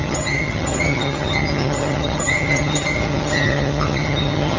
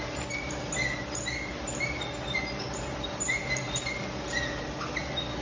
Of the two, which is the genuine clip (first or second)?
second